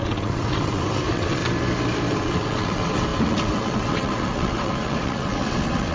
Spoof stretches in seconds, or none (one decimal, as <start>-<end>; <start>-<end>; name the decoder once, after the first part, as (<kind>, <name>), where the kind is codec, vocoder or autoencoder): 0.0-1.4 (vocoder, WaveNeXt); 2.1-5.9